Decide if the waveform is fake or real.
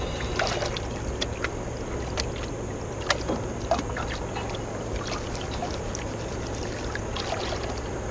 real